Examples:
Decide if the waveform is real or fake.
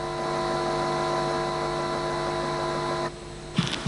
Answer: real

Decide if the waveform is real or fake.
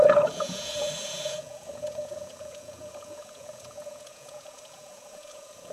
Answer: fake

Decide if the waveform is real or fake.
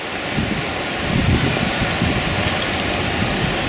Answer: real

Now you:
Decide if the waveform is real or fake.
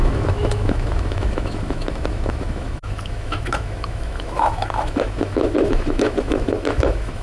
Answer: fake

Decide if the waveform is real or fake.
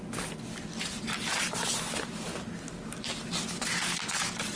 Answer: real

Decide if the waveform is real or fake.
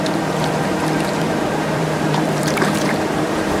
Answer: fake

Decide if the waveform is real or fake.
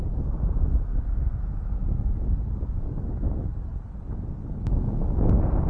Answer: real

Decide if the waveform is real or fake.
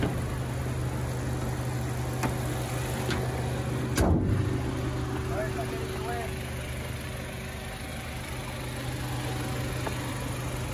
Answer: real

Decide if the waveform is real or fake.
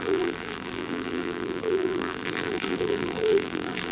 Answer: fake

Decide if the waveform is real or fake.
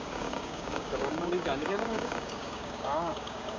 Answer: fake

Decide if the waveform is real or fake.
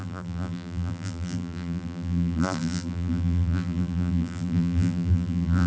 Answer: fake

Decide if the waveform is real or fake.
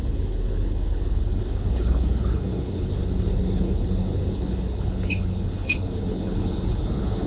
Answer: fake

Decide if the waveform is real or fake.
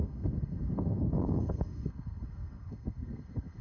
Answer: fake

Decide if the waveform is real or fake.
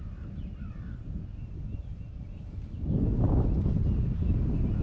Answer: real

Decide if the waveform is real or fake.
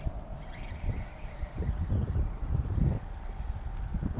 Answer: real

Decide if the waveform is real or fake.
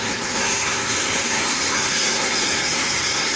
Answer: fake